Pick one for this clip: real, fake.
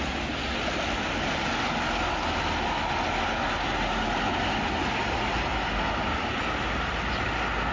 real